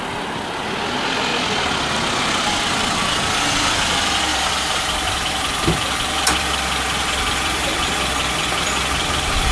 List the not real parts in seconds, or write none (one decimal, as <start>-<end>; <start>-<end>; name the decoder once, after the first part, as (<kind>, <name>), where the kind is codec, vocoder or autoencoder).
4.3-9.5 (vocoder, BigVGAN v2)